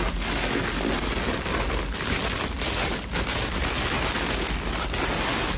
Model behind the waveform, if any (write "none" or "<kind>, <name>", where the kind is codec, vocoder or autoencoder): none